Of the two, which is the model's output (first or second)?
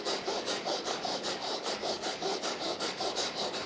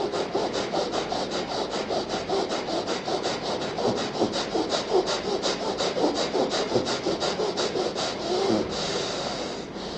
first